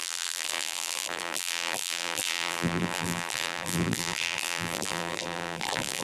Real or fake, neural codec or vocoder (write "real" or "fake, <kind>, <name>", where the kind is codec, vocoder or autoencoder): fake, vocoder, BigVGAN v2